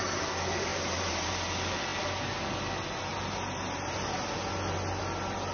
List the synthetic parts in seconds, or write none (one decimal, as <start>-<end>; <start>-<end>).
0.7-1.3